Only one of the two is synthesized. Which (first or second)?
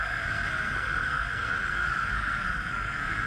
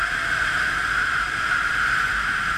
first